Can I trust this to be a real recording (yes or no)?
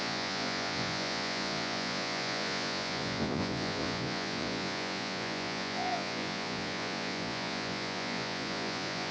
no